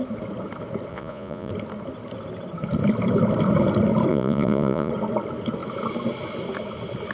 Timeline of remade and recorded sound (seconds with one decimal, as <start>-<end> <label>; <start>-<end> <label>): 0.0-0.9 recorded; 0.9-1.5 remade; 1.5-4.1 recorded; 4.1-4.9 remade; 4.9-7.1 recorded